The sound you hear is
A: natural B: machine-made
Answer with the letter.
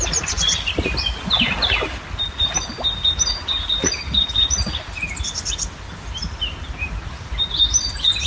A